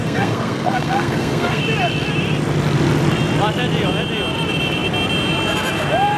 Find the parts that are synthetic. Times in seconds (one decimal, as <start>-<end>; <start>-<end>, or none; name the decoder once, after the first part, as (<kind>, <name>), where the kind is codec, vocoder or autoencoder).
0.0-1.6 (codec, SNAC)